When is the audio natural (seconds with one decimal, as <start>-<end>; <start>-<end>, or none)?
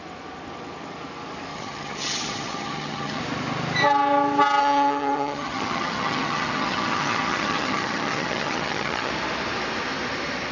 0.0-1.5; 3.2-4.6; 9.1-10.5